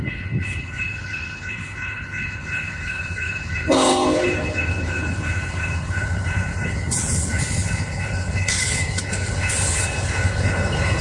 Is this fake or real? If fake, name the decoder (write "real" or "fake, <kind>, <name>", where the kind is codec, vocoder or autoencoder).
fake, codec, HILCodec